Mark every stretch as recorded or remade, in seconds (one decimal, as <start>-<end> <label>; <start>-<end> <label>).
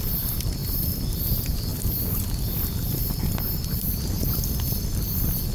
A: 0.0-5.5 recorded